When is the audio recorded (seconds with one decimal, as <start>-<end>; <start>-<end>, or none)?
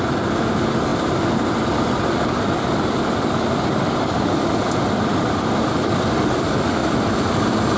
0.0-6.8